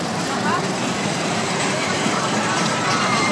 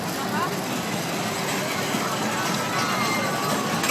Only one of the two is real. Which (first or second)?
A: second